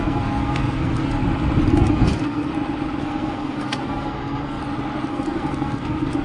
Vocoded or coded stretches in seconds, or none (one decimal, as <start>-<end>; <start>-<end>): 0.0-1.2; 1.7-2.5; 3.0-4.6; 5.1-6.2